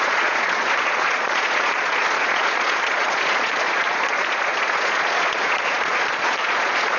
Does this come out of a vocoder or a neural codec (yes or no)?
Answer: yes